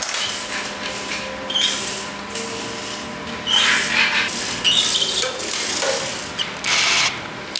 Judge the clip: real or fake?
real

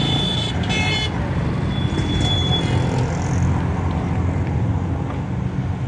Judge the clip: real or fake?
real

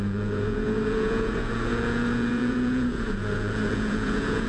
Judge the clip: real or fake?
fake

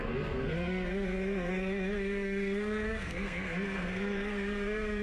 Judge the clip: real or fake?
fake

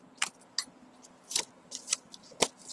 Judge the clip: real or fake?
real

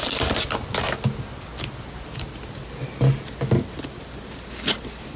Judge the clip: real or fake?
real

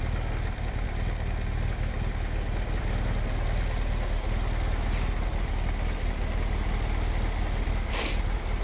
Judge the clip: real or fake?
real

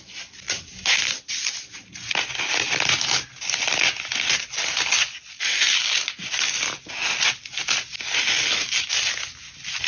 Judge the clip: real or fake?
real